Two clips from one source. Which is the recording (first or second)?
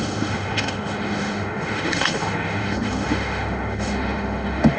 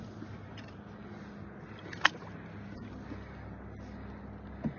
second